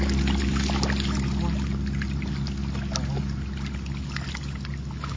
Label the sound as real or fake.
real